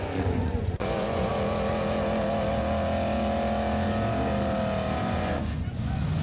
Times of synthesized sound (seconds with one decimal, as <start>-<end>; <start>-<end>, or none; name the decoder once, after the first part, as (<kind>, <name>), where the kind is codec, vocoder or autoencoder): 0.0-1.3 (vocoder, Vocos); 5.0-6.2